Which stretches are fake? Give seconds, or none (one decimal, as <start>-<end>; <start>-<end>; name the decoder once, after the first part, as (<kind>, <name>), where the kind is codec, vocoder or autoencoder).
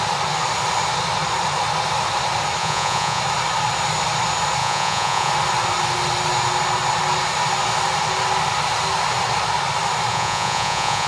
2.6-3.2 (vocoder, Vocos); 4.6-5.3; 10.1-11.1